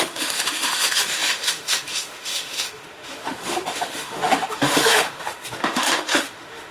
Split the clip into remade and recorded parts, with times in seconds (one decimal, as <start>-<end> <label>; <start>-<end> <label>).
0.0-6.7 remade

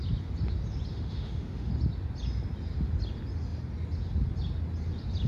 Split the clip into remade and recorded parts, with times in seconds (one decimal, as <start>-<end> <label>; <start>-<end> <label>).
0.0-0.9 recorded; 0.9-1.7 remade; 1.7-5.3 recorded

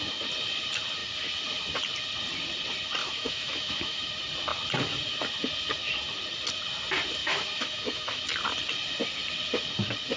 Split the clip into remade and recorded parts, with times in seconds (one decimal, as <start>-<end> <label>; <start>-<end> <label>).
0.0-3.0 recorded; 3.0-4.1 remade; 4.1-7.2 recorded; 7.2-8.2 remade; 8.2-10.2 recorded

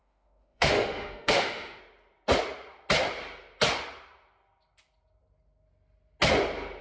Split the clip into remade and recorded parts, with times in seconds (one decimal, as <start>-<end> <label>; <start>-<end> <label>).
0.0-1.8 remade; 1.8-6.8 recorded